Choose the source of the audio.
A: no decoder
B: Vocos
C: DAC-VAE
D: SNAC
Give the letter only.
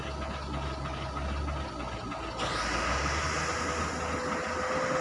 A